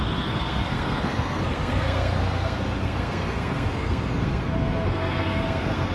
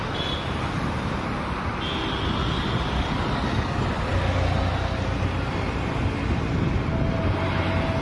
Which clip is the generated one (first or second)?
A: first